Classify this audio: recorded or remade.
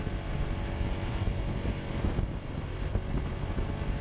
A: recorded